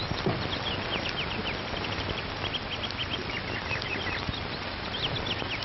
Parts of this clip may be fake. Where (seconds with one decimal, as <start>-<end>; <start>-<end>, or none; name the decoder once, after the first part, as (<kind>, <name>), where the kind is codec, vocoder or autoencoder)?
3.0-4.5 (vocoder, BigVGAN v2)

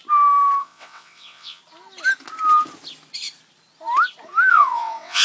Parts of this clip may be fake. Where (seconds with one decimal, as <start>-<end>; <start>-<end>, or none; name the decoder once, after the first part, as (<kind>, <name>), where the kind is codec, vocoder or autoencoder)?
0.6-1.6 (vocoder, WaveNeXt); 4.5-5.2

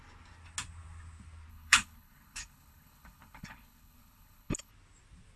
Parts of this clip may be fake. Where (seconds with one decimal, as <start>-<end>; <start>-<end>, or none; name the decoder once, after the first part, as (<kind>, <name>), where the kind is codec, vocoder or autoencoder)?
1.5-4.7 (codec, HILCodec)

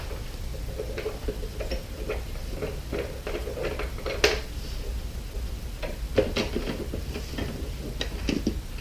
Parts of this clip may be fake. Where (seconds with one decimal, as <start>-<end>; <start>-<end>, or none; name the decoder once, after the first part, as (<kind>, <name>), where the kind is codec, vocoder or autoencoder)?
none

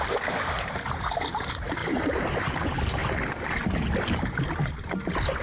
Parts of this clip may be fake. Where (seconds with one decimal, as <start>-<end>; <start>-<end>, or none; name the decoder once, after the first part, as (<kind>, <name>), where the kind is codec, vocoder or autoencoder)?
0.0-3.0 (vocoder, BigVGAN v2); 4.0-5.4

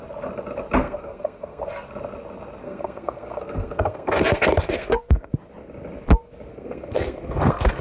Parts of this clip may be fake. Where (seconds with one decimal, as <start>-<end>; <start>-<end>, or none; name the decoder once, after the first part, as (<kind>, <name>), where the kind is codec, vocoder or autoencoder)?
0.8-1.6 (codec, SNAC); 2.6-5.3; 6.5-7.8

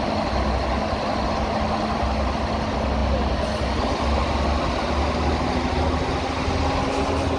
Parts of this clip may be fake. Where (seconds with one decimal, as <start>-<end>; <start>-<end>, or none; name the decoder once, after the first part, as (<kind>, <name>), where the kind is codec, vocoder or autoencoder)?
3.0-3.8 (vocoder, BigVGAN v2)

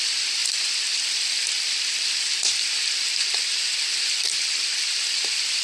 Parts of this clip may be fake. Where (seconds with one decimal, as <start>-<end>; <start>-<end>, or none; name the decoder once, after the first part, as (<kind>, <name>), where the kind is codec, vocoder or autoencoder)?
none